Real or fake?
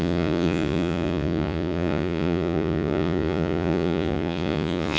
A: fake